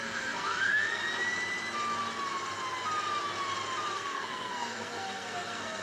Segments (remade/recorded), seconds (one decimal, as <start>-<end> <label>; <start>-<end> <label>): 0.0-1.0 remade; 1.0-3.9 recorded; 3.9-5.8 remade